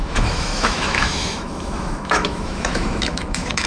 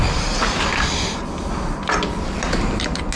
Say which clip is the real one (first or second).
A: second